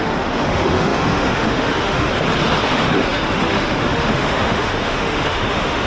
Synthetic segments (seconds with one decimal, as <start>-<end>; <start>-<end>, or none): 0.0-2.1; 2.6-5.9